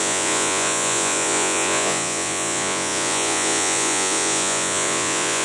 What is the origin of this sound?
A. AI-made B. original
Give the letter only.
A